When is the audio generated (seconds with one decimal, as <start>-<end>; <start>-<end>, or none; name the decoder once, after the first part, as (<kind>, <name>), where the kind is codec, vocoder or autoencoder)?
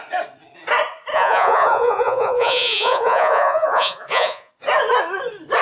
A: 1.1-4.5 (vocoder, Vocos)